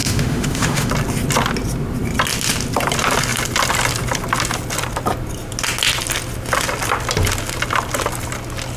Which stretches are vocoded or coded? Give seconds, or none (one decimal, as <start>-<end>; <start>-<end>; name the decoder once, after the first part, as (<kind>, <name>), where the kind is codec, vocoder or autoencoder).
0.0-0.9 (autoencoder, DAC-VAE)